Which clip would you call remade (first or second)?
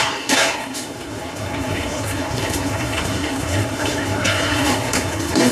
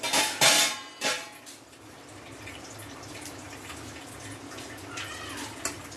first